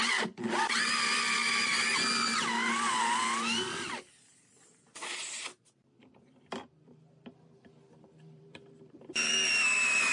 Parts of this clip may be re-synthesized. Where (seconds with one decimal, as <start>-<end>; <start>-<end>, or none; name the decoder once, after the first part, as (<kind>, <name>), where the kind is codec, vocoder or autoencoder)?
0.0-1.4 (vocoder, BigVGAN v2); 5.9-10.1